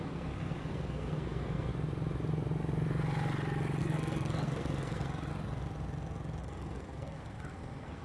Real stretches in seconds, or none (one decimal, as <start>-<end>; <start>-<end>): 1.7-3.8; 5.3-6.4